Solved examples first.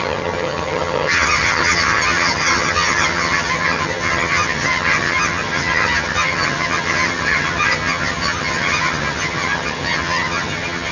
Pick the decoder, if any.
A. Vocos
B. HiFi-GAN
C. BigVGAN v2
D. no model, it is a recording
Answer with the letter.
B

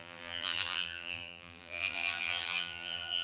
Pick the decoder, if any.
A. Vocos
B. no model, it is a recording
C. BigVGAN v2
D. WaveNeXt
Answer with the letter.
C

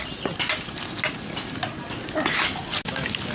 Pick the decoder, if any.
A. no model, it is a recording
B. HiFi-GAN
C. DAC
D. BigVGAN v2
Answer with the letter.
A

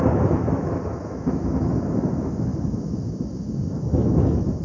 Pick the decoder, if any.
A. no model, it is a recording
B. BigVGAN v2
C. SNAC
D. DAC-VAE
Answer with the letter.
D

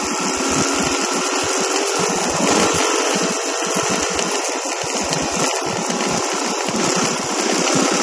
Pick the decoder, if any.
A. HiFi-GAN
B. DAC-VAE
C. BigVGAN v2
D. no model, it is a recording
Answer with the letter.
D